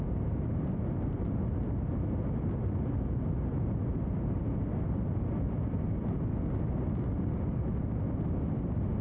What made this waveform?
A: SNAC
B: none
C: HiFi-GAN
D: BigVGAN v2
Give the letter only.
B